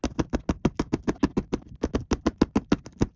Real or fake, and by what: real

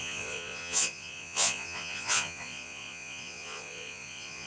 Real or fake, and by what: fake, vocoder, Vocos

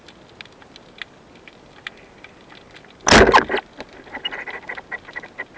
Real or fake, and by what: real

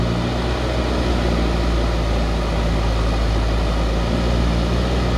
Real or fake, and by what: real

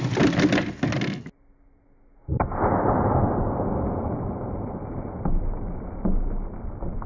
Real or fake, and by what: real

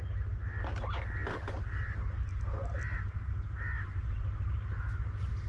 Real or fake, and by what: real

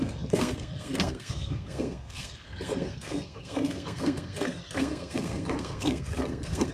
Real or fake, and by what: fake, codec, SNAC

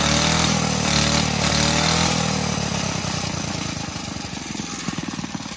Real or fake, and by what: real